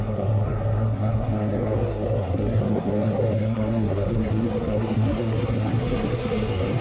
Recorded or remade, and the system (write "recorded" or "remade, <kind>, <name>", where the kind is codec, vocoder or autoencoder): remade, codec, SNAC